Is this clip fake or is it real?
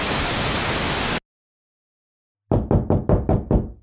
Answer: real